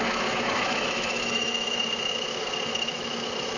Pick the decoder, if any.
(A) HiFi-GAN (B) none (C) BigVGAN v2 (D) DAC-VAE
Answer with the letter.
D